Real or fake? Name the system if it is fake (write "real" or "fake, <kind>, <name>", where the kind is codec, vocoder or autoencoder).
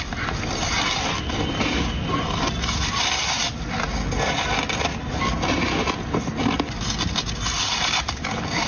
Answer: real